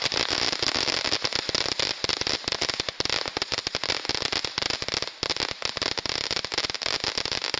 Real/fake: real